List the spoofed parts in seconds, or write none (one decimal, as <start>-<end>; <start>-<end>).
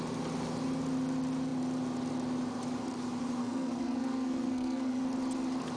3.4-5.0